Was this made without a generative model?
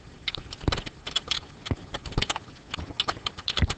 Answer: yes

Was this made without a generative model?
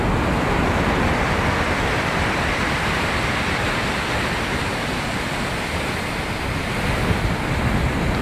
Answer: yes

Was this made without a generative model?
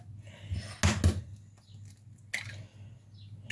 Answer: yes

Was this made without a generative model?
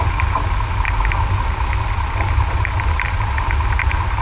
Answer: yes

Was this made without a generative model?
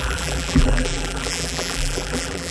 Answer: no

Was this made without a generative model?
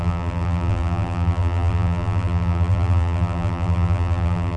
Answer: no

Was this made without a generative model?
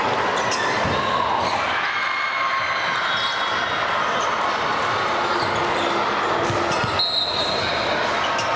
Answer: yes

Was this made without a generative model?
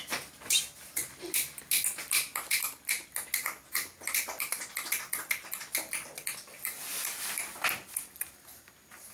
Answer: yes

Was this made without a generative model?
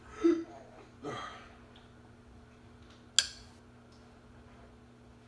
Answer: yes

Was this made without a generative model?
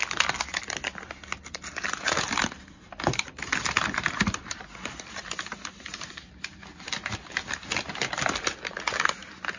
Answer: yes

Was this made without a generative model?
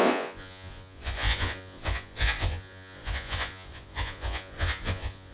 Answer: no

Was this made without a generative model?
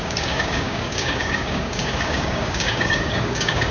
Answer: no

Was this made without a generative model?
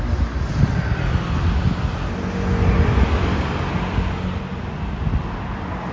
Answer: yes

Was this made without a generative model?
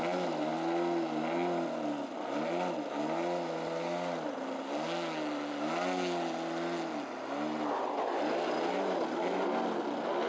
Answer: yes